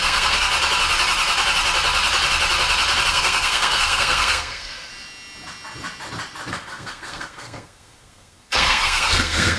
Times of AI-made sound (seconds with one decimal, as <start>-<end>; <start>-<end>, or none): 0.0-0.5; 3.1-4.9; 6.5-9.6